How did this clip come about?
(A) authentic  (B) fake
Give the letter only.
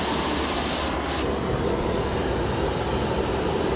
A